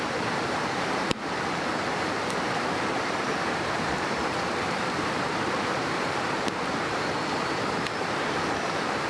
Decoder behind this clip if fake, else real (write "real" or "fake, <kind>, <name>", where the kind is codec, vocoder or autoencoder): fake, vocoder, BigVGAN v2